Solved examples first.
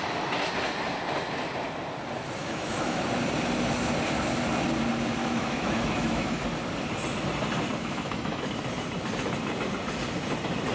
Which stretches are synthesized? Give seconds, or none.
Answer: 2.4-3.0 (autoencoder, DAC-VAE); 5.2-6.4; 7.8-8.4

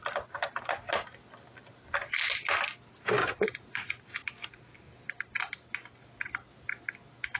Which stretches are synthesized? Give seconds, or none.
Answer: 3.2-3.9 (vocoder, Vocos)

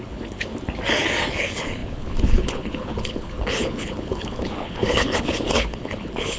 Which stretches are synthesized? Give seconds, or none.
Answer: 0.0-0.5 (codec, HILCodec); 1.3-6.4

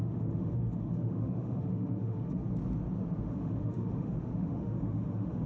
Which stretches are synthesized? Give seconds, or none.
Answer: 0.0-2.4 (autoencoder, DAC-VAE); 3.2-5.5

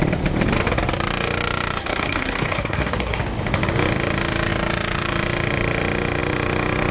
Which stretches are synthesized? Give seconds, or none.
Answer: 1.8-3.2 (codec, SNAC)